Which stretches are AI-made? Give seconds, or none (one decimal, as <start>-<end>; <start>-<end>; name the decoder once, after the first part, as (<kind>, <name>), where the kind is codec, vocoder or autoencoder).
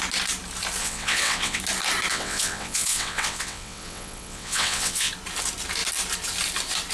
0.8-1.6 (vocoder, WaveNeXt); 2.1-5.1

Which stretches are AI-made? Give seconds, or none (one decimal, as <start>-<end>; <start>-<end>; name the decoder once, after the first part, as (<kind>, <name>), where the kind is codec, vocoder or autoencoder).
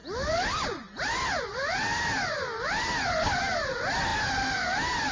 none